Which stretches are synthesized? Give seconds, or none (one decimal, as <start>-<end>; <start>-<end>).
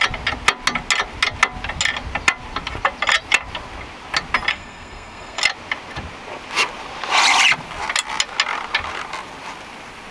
4.5-5.4